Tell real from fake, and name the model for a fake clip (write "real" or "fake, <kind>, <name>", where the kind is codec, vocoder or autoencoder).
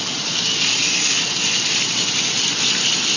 real